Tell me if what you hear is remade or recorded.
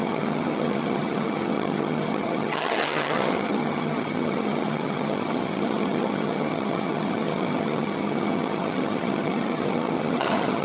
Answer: remade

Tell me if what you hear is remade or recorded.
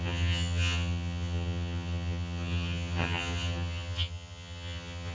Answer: remade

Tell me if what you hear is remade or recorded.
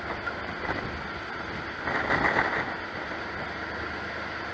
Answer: recorded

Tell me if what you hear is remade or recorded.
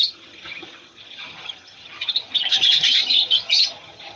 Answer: remade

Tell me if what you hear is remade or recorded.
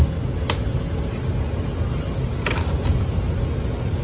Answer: recorded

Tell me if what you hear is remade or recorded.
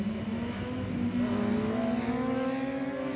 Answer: recorded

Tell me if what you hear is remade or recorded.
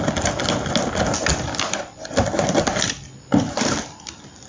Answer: recorded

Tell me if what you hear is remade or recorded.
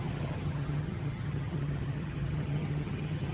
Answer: remade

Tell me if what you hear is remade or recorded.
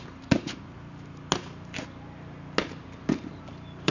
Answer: recorded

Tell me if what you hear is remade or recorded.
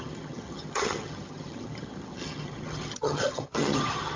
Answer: remade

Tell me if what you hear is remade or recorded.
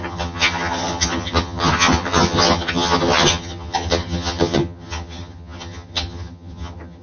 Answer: remade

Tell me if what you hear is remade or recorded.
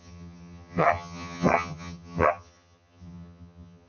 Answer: remade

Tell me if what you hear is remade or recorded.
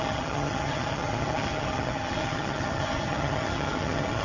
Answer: remade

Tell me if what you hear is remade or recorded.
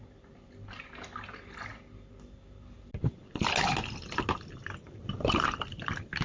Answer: recorded